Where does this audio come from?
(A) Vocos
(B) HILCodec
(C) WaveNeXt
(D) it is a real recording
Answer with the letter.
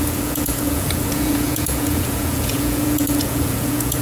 A